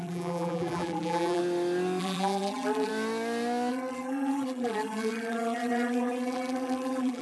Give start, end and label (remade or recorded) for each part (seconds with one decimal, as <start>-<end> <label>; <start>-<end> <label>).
0.0-1.4 remade; 1.4-2.0 recorded; 2.0-2.9 remade; 2.9-3.7 recorded; 3.7-7.2 remade